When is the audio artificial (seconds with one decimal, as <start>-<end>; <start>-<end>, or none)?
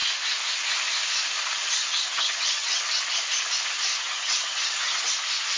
1.8-3.0; 3.9-5.1